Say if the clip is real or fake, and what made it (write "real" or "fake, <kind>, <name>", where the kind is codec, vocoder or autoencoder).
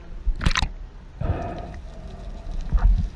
real